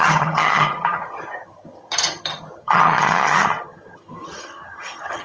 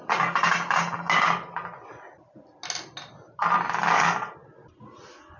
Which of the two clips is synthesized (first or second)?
first